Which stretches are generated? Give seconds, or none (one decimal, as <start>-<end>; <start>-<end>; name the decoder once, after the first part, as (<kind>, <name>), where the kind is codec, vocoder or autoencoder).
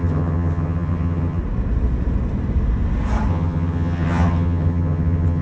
0.0-1.4 (vocoder, HiFi-GAN); 3.3-5.4